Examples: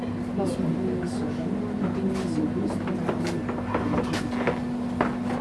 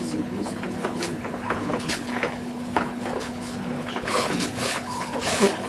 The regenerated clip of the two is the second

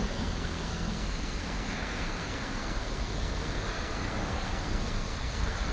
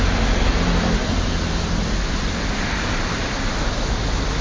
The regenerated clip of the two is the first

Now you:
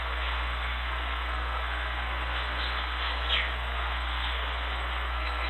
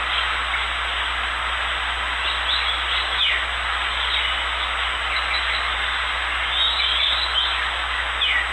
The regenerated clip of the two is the first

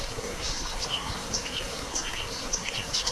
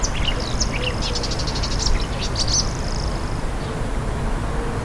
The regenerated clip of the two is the first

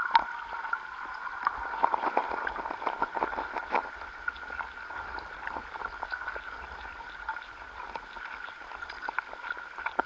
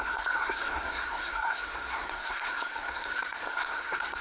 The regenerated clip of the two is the second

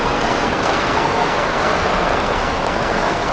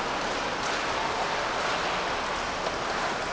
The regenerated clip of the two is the first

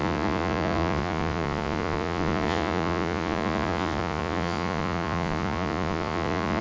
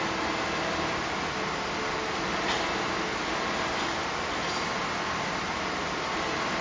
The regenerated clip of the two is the first